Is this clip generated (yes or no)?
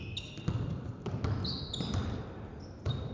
no